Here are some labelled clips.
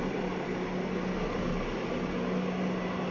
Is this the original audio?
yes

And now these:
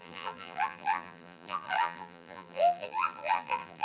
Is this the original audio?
no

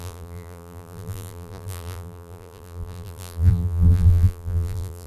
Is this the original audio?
no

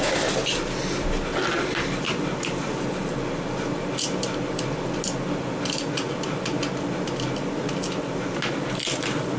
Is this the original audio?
yes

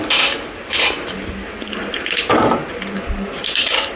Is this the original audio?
yes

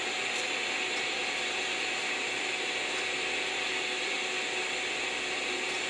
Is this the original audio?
yes